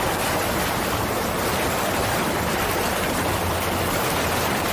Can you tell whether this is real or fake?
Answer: real